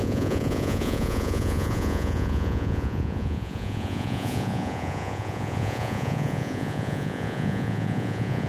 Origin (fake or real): fake